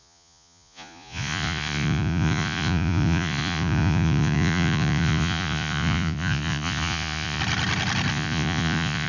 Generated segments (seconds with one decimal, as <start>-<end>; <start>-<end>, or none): 0.0-7.4; 8.1-9.1